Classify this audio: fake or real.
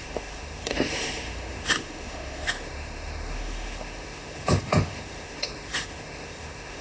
fake